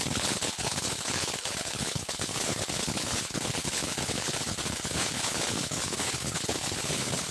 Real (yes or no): no